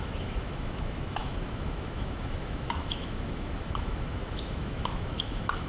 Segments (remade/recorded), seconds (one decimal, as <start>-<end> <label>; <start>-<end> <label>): 0.0-5.7 remade